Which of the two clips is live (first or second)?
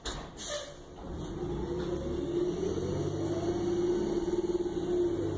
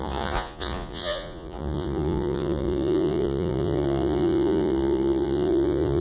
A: first